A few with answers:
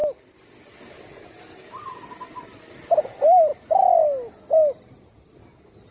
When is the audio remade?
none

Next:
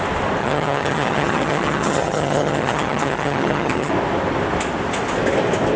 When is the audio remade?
0.4-3.9

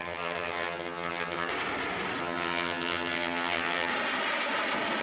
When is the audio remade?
0.0-1.5; 2.2-3.9